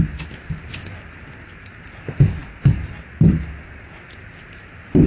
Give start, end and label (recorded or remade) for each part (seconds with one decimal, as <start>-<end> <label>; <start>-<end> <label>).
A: 0.0-5.1 recorded